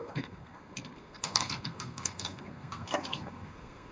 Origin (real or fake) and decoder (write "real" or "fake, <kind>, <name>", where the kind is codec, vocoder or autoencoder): fake, codec, SNAC